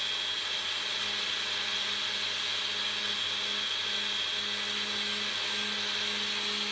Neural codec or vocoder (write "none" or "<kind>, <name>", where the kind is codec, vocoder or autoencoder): none